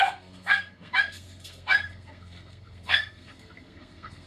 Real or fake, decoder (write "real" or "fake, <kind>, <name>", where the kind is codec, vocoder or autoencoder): fake, codec, SNAC